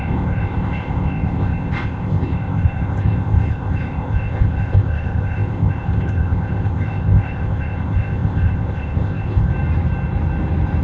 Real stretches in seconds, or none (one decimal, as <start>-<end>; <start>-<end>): 9.5-10.8